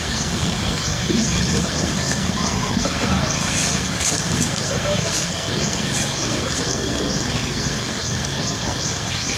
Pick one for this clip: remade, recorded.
remade